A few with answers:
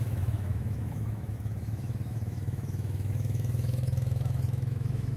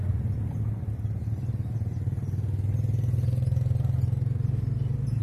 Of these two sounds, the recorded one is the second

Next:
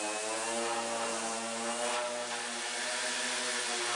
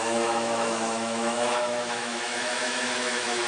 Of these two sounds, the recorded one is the first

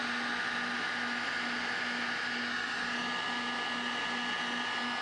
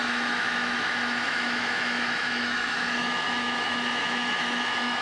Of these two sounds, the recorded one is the first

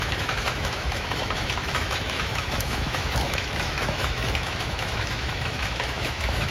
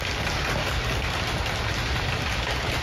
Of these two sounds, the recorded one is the second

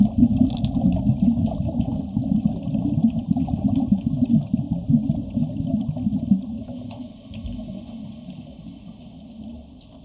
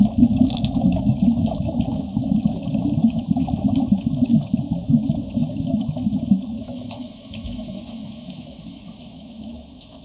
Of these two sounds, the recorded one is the first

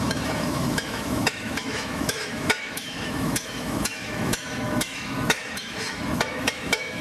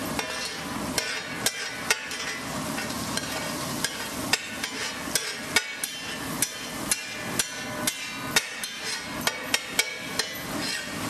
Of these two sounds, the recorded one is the second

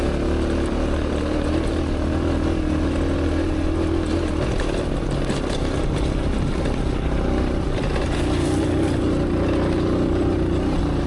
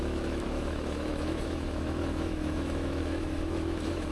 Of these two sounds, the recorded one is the first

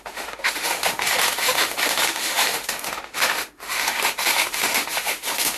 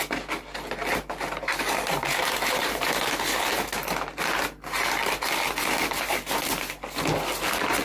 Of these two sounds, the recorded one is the second